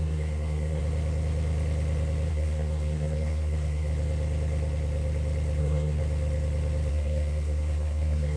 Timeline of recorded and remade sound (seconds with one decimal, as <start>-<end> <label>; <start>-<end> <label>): 0.0-0.8 remade; 0.8-2.3 recorded; 2.3-3.9 remade; 3.9-5.6 recorded; 5.6-6.0 remade; 6.0-6.9 recorded; 6.9-8.4 remade